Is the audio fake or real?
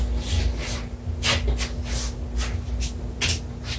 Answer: real